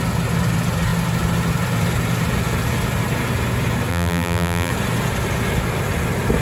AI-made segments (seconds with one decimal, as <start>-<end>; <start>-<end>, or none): 3.9-4.7